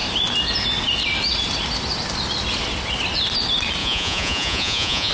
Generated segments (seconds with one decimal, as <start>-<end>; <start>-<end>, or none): 3.8-5.1